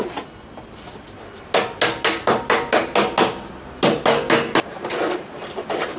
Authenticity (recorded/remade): recorded